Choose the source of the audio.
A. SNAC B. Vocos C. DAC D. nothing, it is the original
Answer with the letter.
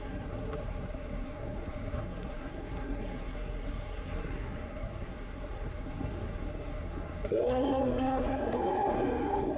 A